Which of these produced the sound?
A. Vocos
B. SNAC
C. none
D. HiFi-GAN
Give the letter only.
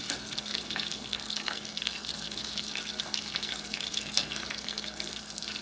B